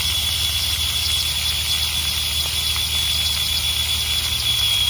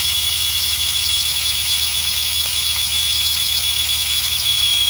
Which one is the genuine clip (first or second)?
first